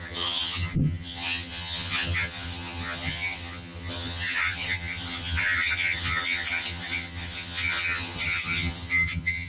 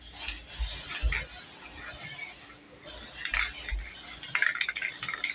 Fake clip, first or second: first